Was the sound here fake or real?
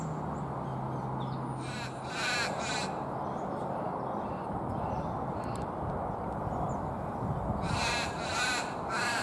real